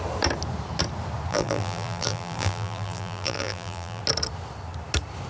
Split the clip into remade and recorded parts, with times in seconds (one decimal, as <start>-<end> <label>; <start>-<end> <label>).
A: 0.0-1.3 recorded; 1.3-4.0 remade; 4.0-5.3 recorded